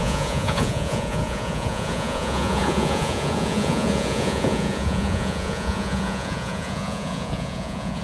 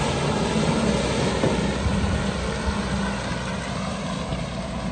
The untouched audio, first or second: second